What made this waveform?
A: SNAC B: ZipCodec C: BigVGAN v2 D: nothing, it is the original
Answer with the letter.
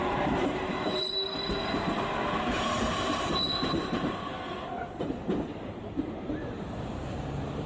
C